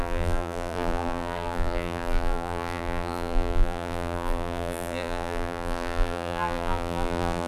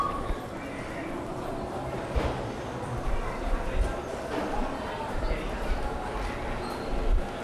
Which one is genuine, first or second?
second